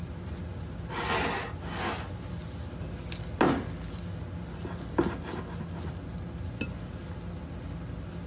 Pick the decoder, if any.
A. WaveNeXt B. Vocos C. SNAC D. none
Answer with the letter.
D